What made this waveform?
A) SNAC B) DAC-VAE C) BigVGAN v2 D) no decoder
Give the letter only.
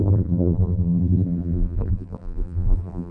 C